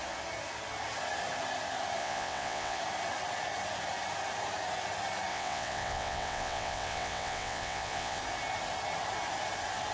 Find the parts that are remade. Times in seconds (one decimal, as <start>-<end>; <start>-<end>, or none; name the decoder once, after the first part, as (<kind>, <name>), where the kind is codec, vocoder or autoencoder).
2.0-2.8 (vocoder, WaveNeXt); 5.3-8.2